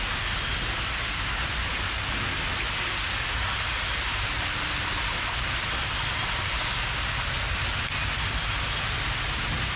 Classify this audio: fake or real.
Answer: real